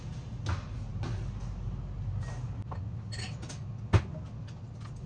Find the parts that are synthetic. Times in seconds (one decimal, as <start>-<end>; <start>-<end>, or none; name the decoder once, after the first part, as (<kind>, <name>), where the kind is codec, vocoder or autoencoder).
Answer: none